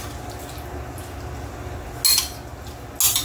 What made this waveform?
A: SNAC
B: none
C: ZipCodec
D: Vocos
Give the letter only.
B